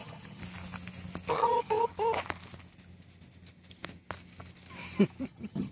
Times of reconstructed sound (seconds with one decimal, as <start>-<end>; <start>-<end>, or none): 0.0-0.4; 1.3-1.9; 5.3-5.7